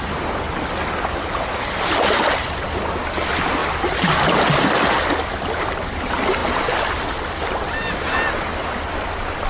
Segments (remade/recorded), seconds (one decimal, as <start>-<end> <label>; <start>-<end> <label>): 0.0-9.5 recorded